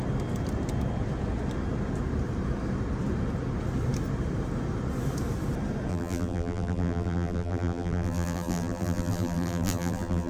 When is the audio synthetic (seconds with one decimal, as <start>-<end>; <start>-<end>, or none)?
5.9-10.3